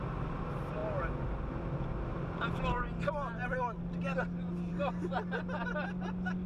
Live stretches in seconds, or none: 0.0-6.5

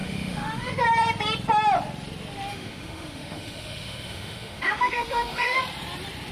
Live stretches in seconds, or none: 0.8-2.5; 5.6-6.3